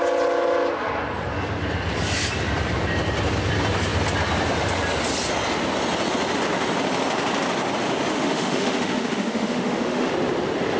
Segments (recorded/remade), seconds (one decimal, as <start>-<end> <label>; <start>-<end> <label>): 0.0-8.1 recorded; 8.1-10.1 remade; 10.1-10.8 recorded